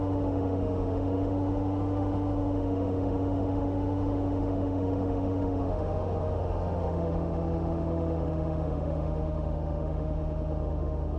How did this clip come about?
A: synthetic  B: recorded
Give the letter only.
A